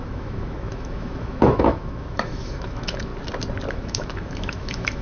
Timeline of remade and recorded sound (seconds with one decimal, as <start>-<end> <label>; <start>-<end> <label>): 0.0-3.1 remade; 3.1-3.7 recorded; 3.7-5.0 remade